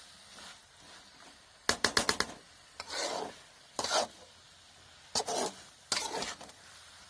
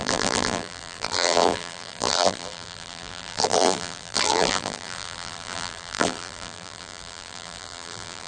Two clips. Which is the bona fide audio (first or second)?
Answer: first